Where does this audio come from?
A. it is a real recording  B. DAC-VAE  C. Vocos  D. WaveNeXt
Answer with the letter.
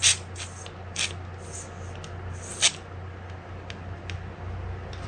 A